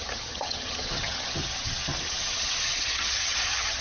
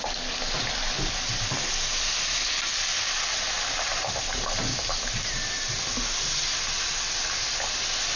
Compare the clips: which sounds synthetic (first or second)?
first